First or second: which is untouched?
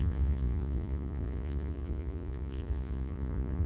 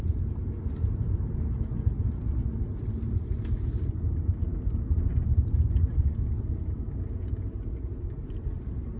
second